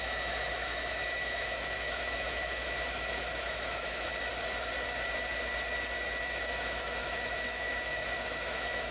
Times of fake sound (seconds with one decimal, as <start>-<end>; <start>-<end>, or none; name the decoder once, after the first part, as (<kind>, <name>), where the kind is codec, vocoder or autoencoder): 0.0-4.1 (autoencoder, DAC-VAE); 6.2-8.9